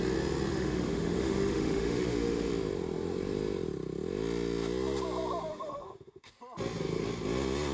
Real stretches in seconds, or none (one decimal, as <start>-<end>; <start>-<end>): 0.0-0.5; 2.5-5.5; 6.3-7.7